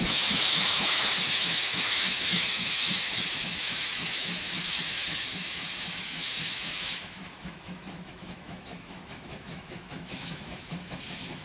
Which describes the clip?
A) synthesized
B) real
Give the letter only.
A